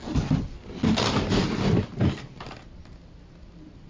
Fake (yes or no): no